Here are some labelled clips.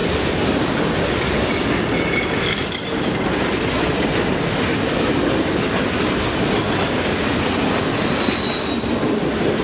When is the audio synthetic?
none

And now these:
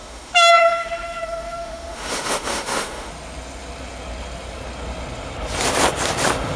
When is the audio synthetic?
0.0-3.1 (autoencoder, DAC-VAE)

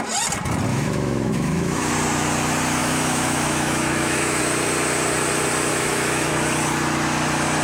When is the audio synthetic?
0.7-1.9 (autoencoder, DAC-VAE); 2.8-4.4; 5.7-6.3

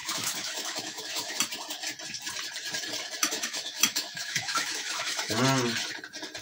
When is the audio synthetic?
0.0-1.4 (autoencoder, DAC-VAE); 3.2-5.4

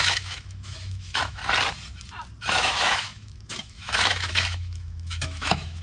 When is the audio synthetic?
0.0-1.4 (autoencoder, DAC-VAE); 2.4-5.8

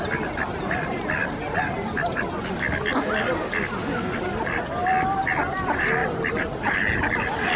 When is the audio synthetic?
none

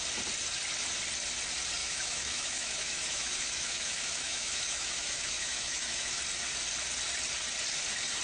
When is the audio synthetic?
1.8-6.2 (autoencoder, DAC-VAE)

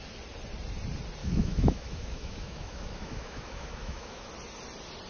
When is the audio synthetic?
1.2-4.3 (autoencoder, DAC-VAE)